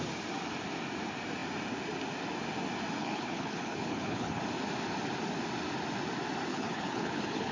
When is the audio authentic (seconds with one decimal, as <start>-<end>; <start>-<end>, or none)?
0.0-3.0; 4.4-6.5